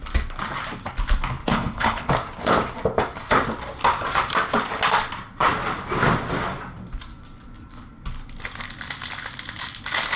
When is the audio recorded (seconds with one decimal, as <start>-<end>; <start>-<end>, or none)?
0.0-1.5; 2.1-10.2

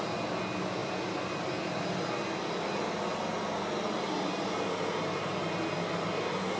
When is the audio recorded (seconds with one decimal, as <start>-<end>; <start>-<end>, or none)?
0.0-6.6

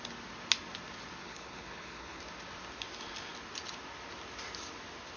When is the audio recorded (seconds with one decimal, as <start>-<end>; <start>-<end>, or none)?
0.0-1.2; 2.2-5.2